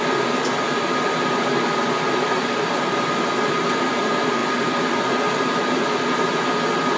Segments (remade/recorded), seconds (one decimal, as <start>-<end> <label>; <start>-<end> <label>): 0.0-7.0 recorded